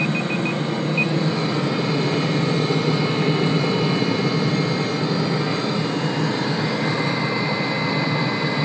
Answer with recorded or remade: recorded